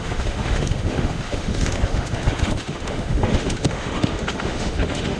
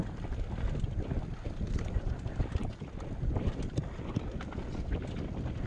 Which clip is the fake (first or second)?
first